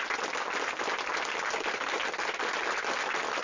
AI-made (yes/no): no